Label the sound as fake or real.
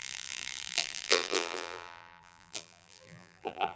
fake